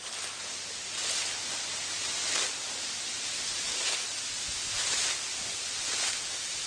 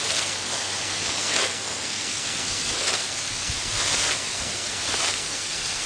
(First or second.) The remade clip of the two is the second